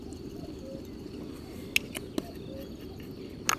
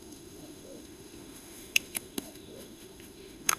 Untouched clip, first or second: first